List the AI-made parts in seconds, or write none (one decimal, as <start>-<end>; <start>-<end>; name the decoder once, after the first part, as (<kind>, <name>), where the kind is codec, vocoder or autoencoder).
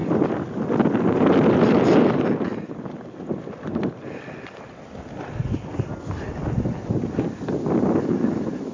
none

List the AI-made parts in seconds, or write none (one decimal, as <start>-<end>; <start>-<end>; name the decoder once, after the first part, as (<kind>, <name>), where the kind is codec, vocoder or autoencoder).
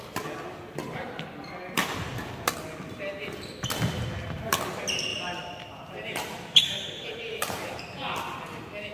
5.1-7.8 (vocoder, BigVGAN v2)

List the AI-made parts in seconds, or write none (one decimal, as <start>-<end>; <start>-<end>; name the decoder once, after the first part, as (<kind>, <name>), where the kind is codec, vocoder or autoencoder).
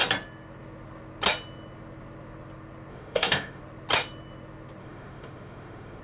2.9-3.6 (autoencoder, DAC-VAE); 4.8-6.0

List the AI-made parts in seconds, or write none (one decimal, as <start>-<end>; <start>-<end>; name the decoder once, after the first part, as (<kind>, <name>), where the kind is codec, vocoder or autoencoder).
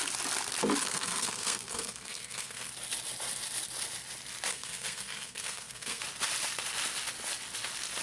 0.8-2.7 (codec, SNAC); 4.5-6.0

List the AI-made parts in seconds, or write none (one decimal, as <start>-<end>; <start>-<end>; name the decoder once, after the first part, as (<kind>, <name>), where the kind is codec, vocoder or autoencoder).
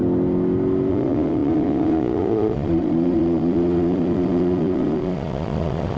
0.9-6.0 (vocoder, Vocos)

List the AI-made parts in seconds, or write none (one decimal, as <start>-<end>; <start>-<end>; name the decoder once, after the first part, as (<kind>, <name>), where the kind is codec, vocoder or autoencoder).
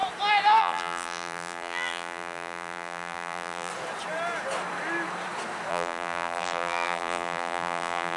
0.6-3.7 (vocoder, BigVGAN v2); 5.7-8.2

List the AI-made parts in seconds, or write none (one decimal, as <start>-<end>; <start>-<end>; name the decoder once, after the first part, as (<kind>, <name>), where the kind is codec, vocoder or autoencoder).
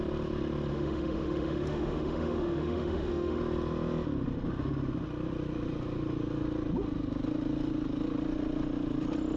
0.7-3.4 (autoencoder, DAC-VAE)